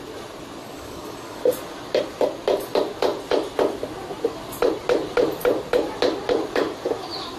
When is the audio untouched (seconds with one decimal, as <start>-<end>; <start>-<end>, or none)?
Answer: 0.0-0.6; 1.4-7.4